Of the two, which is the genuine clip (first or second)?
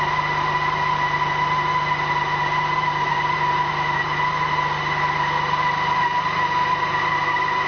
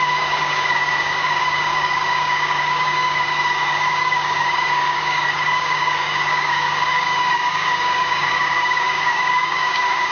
first